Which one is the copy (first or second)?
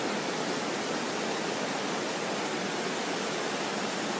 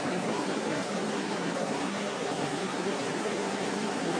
second